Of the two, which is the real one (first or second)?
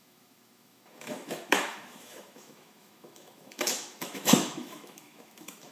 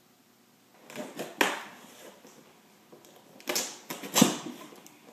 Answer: second